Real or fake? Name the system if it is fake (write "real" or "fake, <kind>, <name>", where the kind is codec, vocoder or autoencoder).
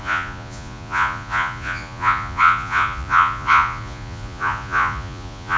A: fake, vocoder, Vocos